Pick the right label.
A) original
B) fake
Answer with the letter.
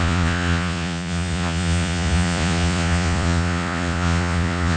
B